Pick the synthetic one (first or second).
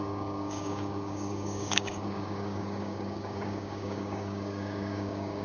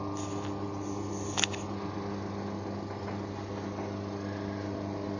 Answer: first